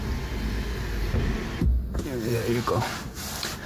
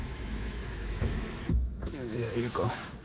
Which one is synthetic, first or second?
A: second